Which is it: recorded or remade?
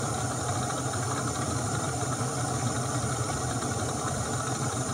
remade